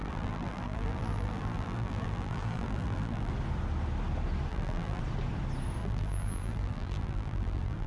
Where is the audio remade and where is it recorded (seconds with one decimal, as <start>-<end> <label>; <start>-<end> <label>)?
0.0-3.3 remade; 3.3-4.5 recorded; 4.5-5.0 remade; 5.0-5.8 recorded; 5.8-7.9 remade